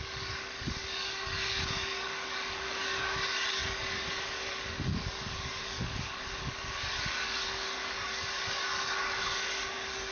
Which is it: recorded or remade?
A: remade